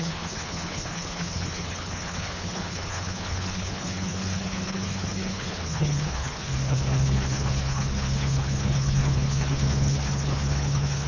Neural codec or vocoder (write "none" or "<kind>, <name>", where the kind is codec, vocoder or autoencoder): codec, HILCodec